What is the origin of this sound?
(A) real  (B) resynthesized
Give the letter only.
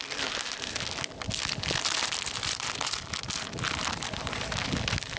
A